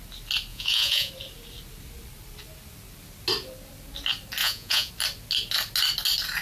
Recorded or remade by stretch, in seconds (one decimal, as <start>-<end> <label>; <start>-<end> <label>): 0.0-0.5 recorded; 0.5-1.1 remade; 1.1-4.4 recorded; 4.4-4.9 remade; 4.9-6.4 recorded